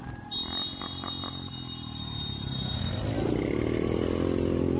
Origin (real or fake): real